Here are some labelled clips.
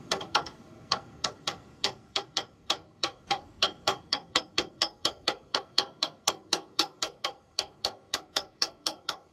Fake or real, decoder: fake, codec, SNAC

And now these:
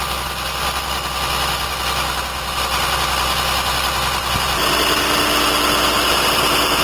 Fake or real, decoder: real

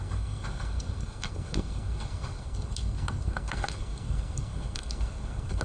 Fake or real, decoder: fake, codec, SNAC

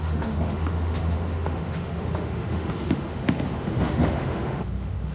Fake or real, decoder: fake, autoencoder, DAC-VAE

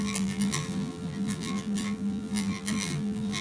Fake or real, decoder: fake, vocoder, BigVGAN v2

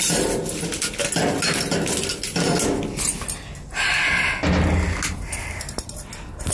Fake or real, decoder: real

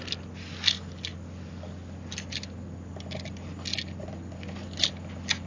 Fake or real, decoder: real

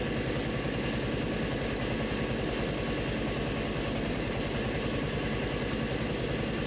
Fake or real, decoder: real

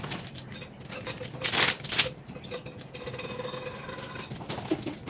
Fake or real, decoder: real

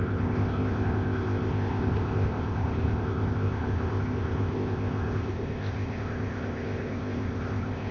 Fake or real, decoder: fake, codec, ZipCodec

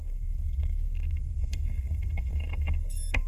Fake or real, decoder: fake, codec, SNAC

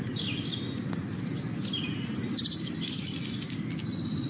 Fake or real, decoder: real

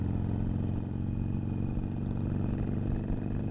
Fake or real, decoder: real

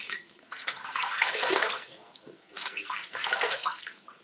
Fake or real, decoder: fake, codec, SNAC